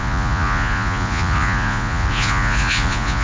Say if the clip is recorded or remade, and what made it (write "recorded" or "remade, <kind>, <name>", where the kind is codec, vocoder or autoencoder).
remade, vocoder, Vocos